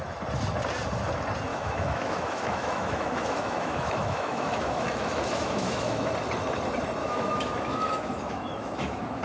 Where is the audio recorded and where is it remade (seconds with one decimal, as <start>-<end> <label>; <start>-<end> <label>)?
0.0-1.5 recorded; 1.5-6.1 remade; 6.1-7.0 recorded; 7.0-9.2 remade